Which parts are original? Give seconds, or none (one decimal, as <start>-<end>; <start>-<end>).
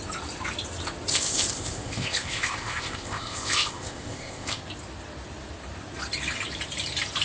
0.0-1.1; 4.6-7.2